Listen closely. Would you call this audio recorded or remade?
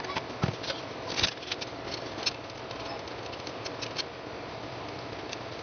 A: recorded